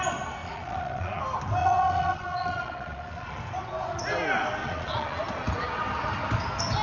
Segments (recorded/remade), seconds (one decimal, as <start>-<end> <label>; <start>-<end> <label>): 0.0-0.4 recorded; 0.4-1.2 remade; 1.2-1.6 recorded; 1.6-3.4 remade; 3.4-4.6 recorded; 4.6-5.2 remade; 5.2-6.8 recorded